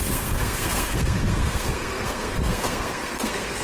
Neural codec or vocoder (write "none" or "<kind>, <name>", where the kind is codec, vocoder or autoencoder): codec, SNAC